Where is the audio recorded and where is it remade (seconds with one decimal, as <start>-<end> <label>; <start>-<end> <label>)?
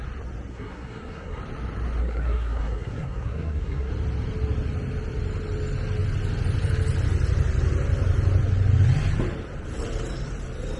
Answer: 0.0-0.5 recorded; 0.5-1.4 remade; 1.4-2.0 recorded; 2.0-3.9 remade; 3.9-10.8 recorded